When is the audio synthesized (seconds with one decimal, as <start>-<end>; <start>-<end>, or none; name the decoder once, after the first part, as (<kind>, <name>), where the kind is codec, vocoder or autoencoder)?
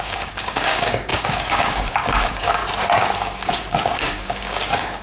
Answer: 0.0-2.6 (codec, DAC); 3.7-5.0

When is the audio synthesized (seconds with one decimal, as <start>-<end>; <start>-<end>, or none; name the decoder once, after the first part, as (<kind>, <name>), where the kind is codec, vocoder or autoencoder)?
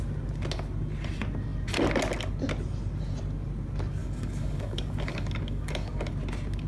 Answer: 4.0-6.1 (codec, DAC)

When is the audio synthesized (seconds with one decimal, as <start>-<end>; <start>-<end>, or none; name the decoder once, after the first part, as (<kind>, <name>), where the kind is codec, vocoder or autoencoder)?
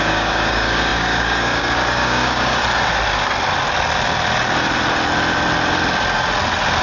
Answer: 0.0-2.6 (codec, DAC)